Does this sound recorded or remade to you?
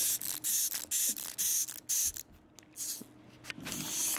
recorded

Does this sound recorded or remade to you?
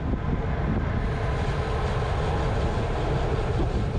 recorded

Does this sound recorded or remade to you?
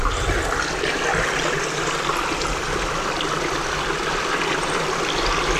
recorded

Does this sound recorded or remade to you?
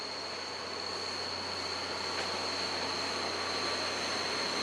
recorded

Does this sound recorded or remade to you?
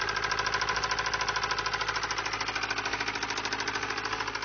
recorded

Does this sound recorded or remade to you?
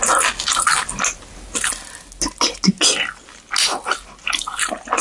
recorded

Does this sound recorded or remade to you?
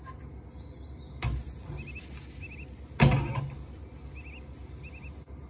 recorded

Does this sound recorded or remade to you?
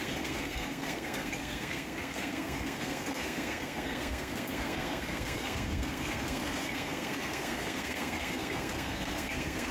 remade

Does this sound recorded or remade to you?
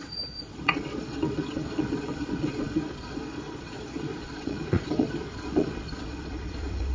remade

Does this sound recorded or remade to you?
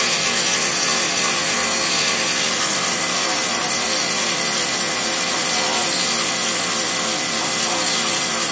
recorded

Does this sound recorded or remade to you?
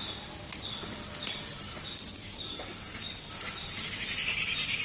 recorded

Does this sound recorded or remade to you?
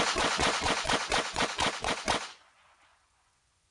remade